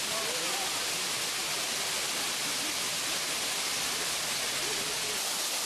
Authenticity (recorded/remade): recorded